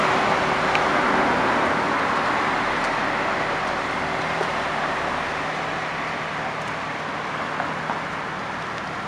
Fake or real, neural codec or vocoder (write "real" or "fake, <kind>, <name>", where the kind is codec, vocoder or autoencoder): real